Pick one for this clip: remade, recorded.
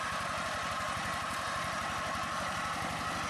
recorded